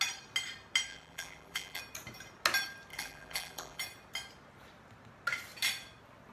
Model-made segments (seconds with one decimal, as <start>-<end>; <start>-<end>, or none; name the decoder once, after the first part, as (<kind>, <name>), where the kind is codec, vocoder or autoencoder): 0.9-1.8 (vocoder, BigVGAN v2); 2.9-3.8